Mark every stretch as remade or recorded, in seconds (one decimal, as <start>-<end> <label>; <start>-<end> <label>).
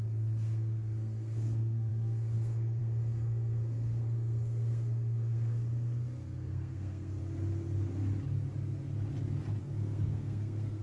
0.0-7.2 remade; 7.2-9.6 recorded; 9.6-10.8 remade